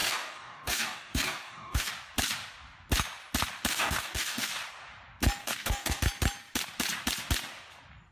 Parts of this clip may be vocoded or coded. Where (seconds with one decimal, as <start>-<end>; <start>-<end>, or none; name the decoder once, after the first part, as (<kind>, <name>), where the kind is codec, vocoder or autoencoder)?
0.0-1.9 (codec, DAC); 3.7-4.5; 5.4-6.0